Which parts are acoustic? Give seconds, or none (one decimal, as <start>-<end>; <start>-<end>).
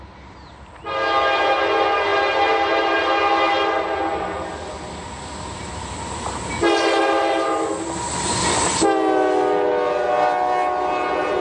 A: 0.0-11.4